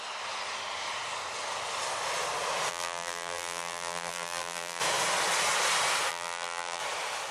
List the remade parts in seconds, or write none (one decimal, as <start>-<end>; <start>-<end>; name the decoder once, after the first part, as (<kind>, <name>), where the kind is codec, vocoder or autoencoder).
2.7-4.8 (vocoder, BigVGAN v2); 6.1-6.8